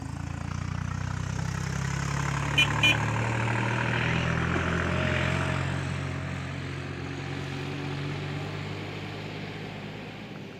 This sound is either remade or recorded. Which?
recorded